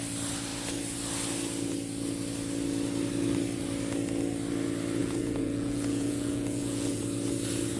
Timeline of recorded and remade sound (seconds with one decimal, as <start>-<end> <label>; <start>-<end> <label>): 0.0-5.0 recorded; 5.0-7.0 remade; 7.0-7.8 recorded